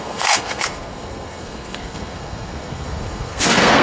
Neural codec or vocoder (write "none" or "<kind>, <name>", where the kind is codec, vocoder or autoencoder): codec, SNAC